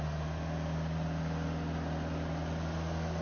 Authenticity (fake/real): real